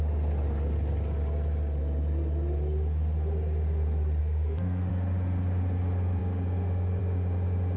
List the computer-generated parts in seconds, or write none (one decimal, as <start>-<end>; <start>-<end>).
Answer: 4.2-4.9